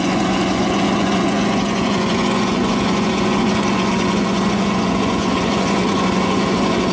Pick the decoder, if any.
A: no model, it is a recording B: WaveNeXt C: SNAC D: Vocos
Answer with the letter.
D